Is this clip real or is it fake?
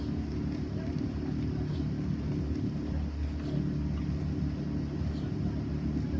real